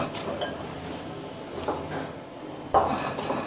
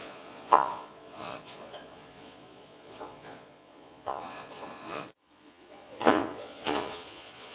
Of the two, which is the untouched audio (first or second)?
first